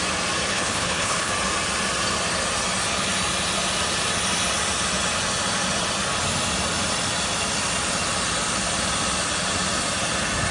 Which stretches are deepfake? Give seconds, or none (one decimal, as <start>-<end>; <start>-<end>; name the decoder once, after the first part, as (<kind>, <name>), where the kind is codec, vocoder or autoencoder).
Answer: 0.5-1.3 (codec, HILCodec)